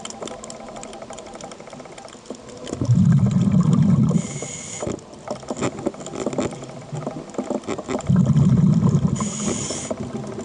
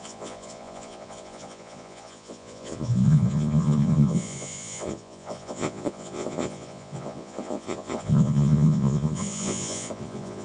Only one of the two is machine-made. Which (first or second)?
second